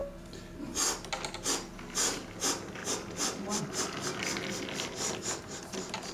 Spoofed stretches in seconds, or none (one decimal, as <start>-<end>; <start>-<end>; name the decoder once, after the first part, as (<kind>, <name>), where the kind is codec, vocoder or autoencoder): none